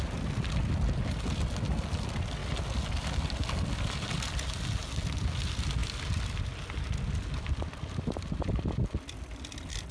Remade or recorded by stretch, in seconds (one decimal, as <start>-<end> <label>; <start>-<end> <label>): 0.0-2.4 recorded; 2.4-3.0 remade; 3.0-5.8 recorded; 5.8-8.5 remade; 8.5-9.9 recorded